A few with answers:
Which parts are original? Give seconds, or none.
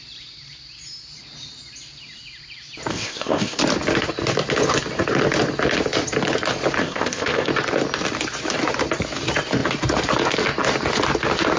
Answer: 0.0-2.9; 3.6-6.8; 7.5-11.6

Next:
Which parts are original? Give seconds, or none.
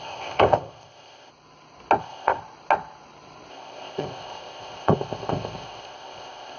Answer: 1.3-2.0; 2.4-3.5